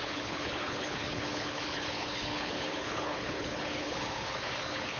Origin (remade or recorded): remade